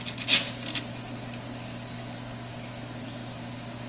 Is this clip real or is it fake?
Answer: real